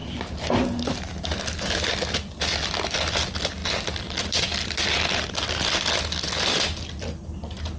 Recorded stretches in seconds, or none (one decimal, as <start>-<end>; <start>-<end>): 0.0-7.8